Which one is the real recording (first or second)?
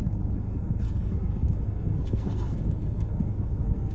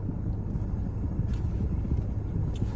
second